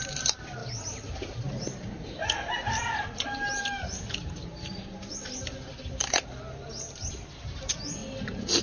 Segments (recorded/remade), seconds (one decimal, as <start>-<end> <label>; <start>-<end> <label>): 0.0-8.0 remade; 8.0-8.6 recorded